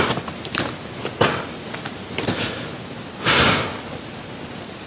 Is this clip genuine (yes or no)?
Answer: yes